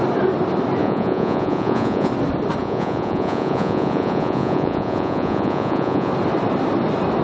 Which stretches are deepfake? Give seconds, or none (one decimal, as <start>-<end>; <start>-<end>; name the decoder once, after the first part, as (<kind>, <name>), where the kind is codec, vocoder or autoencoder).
0.8-2.1 (vocoder, Vocos); 2.6-6.1